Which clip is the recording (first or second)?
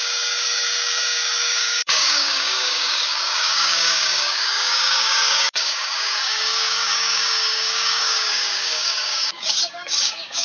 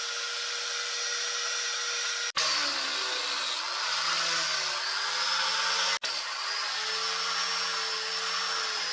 second